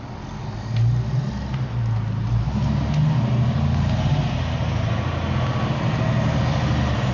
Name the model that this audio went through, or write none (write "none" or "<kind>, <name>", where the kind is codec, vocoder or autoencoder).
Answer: none